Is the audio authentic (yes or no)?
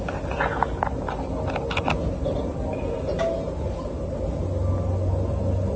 yes